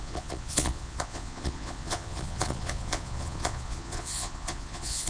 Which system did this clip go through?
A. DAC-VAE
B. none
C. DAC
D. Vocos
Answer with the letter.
D